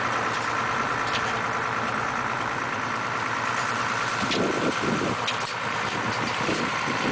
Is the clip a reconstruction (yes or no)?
yes